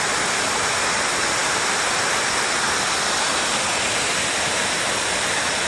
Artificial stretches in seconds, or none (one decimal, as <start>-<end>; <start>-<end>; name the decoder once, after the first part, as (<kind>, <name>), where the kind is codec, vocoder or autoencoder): none